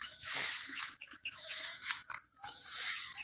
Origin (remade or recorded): remade